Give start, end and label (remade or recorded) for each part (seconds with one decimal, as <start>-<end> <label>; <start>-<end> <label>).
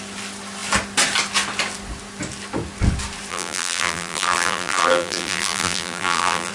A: 0.0-3.3 recorded; 3.3-6.5 remade